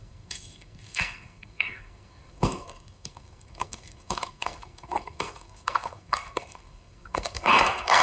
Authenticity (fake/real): fake